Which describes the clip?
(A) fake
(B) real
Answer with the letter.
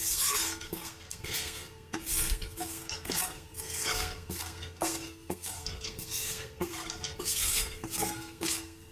A